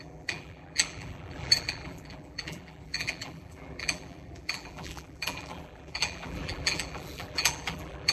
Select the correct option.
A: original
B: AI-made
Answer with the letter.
B